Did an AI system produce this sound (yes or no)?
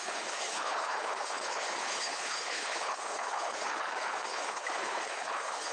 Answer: yes